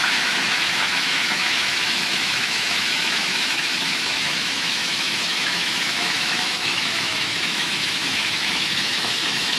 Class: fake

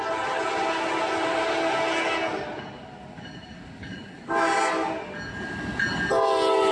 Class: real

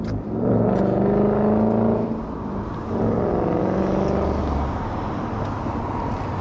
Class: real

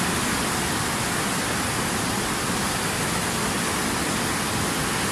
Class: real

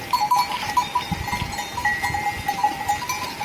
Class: real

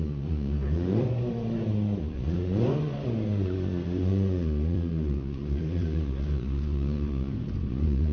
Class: fake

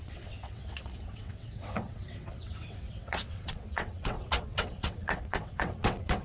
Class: fake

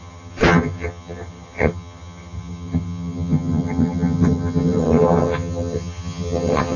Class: fake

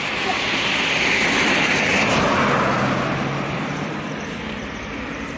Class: fake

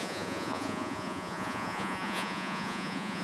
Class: fake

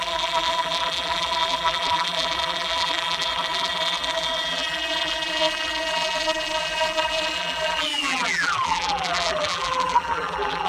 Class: fake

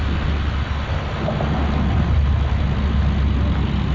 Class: real